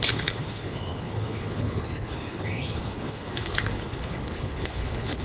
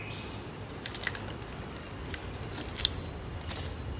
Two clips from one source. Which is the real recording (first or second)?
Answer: second